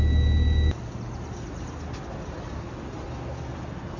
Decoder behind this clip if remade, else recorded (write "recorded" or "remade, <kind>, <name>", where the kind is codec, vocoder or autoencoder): recorded